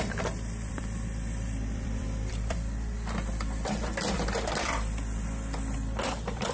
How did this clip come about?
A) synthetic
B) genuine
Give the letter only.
A